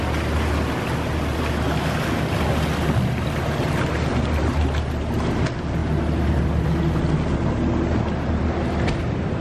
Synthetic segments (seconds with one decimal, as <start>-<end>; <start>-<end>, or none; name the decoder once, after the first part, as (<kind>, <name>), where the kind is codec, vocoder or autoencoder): none